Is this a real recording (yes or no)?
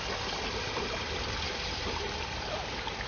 no